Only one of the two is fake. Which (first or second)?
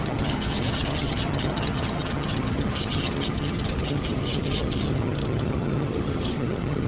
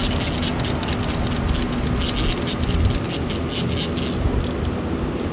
first